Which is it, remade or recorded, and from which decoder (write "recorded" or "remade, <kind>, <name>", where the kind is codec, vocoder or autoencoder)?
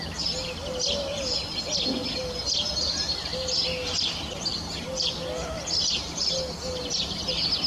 recorded